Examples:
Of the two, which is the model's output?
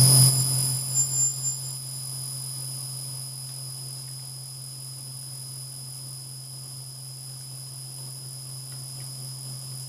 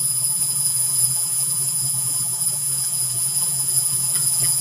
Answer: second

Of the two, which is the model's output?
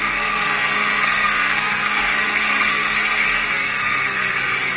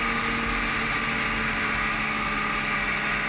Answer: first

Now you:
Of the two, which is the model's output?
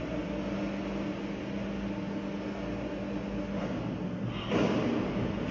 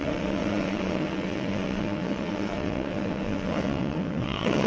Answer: second